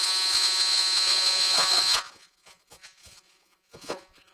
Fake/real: fake